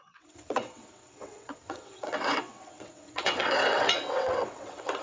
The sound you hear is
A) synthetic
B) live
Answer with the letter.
A